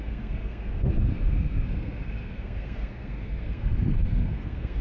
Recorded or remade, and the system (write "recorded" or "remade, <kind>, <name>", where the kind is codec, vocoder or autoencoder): remade, codec, SNAC